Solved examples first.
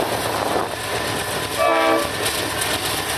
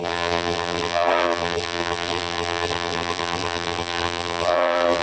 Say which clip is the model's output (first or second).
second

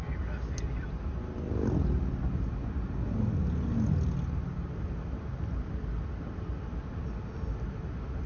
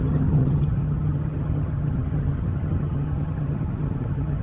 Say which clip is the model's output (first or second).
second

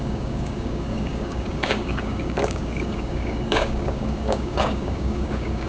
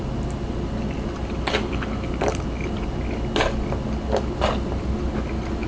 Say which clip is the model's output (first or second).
first